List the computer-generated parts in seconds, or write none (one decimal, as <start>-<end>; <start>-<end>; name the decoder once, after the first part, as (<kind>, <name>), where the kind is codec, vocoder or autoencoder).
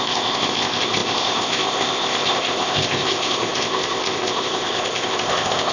0.0-5.7 (codec, ZipCodec)